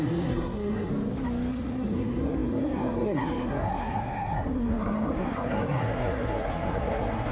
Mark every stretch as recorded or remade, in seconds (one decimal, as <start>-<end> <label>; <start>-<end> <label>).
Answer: 0.0-0.9 remade; 0.9-1.5 recorded; 1.5-7.3 remade